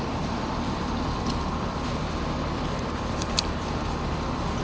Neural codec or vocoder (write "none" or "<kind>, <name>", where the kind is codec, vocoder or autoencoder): vocoder, BigVGAN v2